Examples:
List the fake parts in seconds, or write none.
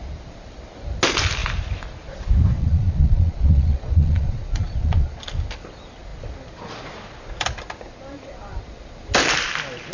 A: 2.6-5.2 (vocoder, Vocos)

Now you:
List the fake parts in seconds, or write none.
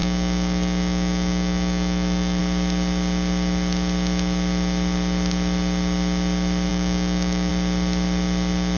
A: 0.0-2.4 (autoencoder, DAC-VAE); 6.7-7.5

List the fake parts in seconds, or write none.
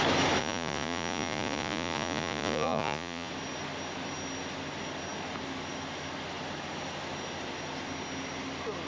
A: 0.4-3.3 (vocoder, Vocos)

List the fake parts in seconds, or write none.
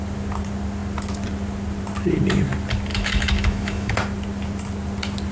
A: 2.9-3.9 (autoencoder, DAC-VAE)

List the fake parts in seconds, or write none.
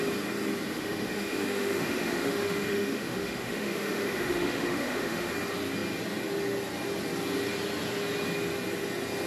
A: 0.7-5.3 (autoencoder, DAC-VAE)